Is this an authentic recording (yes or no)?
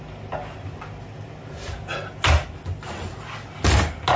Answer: yes